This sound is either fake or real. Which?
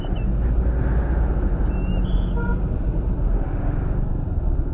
real